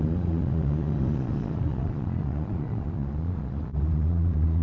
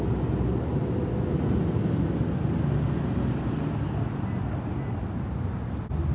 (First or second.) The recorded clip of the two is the second